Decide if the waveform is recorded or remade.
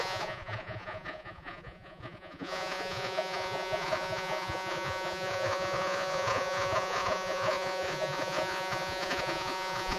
remade